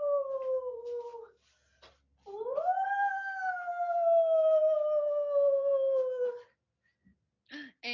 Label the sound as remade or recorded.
recorded